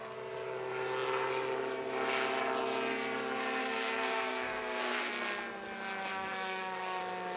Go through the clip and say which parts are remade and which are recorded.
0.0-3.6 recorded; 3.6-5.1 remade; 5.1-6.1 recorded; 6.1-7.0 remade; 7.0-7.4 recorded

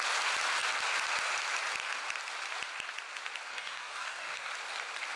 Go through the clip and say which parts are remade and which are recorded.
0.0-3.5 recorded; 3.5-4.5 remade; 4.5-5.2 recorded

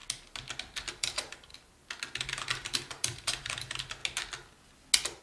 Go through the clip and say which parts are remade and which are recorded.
0.0-0.9 recorded; 0.9-1.5 remade; 1.5-2.3 recorded; 2.3-4.0 remade; 4.0-5.2 recorded

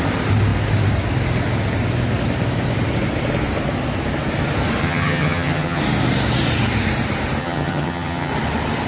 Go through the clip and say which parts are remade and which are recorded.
0.0-4.8 recorded; 4.8-5.8 remade; 5.8-7.4 recorded; 7.4-8.3 remade; 8.3-8.9 recorded

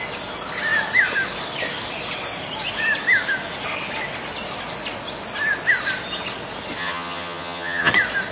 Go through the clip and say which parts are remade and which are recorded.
0.0-6.8 recorded; 6.8-7.9 remade; 7.9-8.3 recorded

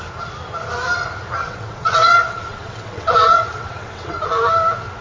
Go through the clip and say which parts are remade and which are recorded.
0.0-1.4 recorded; 1.4-4.1 remade; 4.1-5.0 recorded

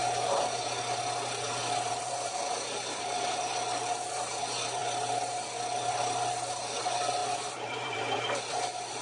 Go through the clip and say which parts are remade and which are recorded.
0.0-1.5 recorded; 1.5-2.1 remade; 2.1-7.2 recorded; 7.2-9.0 remade